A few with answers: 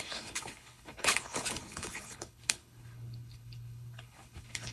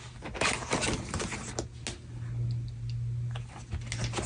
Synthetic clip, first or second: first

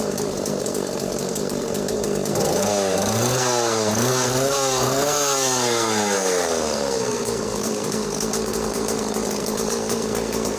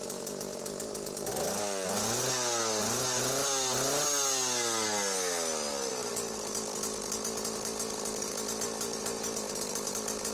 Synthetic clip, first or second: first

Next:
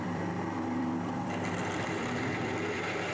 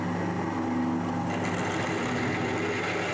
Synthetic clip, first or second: first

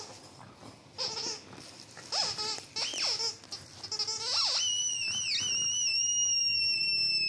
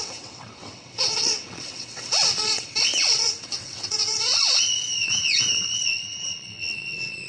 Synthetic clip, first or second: second